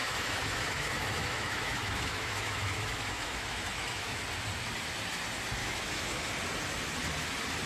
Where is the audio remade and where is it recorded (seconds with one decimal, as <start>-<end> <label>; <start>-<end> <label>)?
0.0-4.2 remade; 4.2-5.6 recorded; 5.6-6.3 remade; 6.3-7.7 recorded